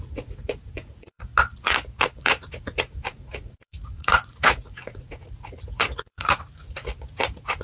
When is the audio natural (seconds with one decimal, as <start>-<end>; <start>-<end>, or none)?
1.3-2.2